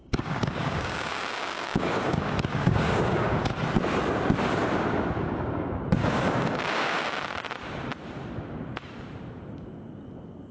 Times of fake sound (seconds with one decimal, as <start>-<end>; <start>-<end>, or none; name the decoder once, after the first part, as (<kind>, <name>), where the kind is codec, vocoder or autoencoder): 0.0-3.4 (codec, DAC); 6.0-7.0